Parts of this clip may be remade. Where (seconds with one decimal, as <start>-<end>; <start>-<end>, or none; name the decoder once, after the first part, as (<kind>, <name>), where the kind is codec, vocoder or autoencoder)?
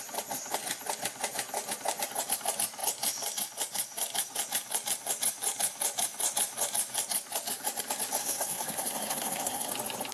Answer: 8.2-9.7 (codec, SNAC)